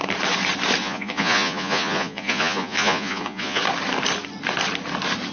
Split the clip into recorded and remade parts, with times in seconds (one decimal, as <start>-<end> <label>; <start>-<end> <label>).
0.0-0.8 recorded; 0.8-3.6 remade; 3.6-5.3 recorded